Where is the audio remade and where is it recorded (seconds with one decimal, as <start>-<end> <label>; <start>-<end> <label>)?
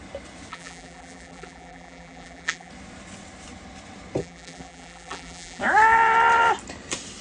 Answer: 0.0-0.5 recorded; 0.5-2.7 remade; 2.7-4.2 recorded; 4.2-5.6 remade; 5.6-7.2 recorded